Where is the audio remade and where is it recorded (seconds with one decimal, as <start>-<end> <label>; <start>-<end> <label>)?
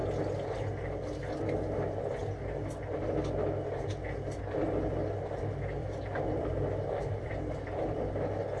0.0-5.8 recorded; 5.8-8.0 remade; 8.0-8.6 recorded